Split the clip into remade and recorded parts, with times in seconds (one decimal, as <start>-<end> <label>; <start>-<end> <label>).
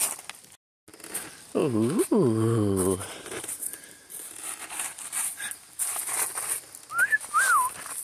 0.0-1.6 recorded; 1.6-6.0 remade; 6.0-8.0 recorded